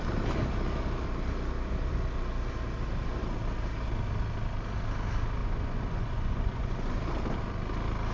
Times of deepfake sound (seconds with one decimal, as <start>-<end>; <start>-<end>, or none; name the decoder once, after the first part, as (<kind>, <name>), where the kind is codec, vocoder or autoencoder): 5.4-7.0 (vocoder, Vocos)